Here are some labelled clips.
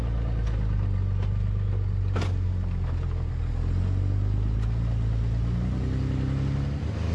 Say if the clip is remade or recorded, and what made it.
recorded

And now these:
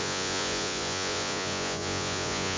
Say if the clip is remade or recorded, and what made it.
remade, vocoder, Vocos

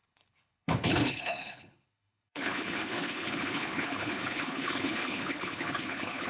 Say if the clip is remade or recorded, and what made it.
remade, codec, HILCodec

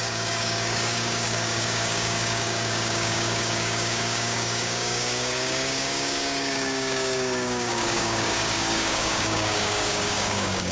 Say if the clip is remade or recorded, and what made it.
remade, codec, DAC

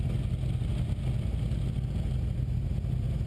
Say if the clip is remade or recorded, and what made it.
recorded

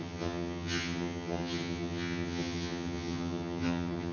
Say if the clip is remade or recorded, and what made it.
remade, vocoder, HiFi-GAN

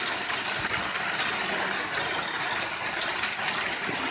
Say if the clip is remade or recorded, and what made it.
recorded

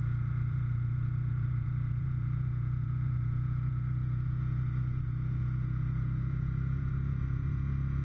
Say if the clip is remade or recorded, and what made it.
remade, vocoder, Vocos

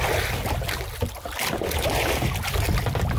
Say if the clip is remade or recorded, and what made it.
recorded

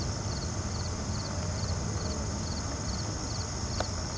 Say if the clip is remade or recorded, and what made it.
recorded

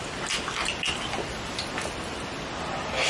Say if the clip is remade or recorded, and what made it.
recorded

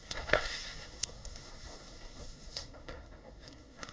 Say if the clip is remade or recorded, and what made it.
remade, codec, SNAC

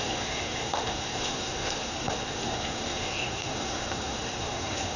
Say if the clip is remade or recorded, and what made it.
remade, codec, SNAC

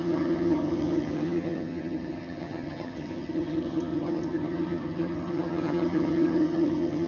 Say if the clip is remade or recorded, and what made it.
remade, vocoder, HiFi-GAN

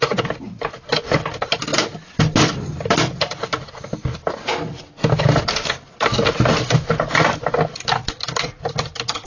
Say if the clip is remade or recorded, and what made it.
recorded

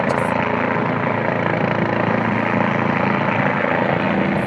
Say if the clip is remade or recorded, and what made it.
recorded